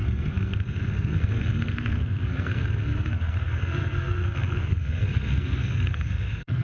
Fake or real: fake